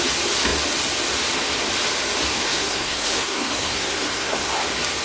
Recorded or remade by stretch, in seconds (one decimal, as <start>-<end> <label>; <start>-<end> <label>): 0.0-2.3 recorded; 2.3-4.5 remade; 4.5-5.0 recorded